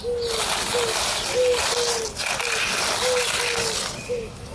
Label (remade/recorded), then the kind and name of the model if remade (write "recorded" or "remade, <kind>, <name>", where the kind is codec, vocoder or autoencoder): recorded